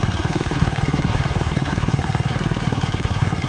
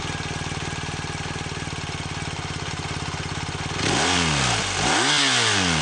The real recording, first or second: second